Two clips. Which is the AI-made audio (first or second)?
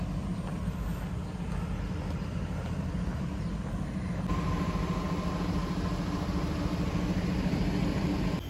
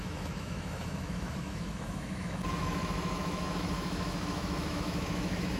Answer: second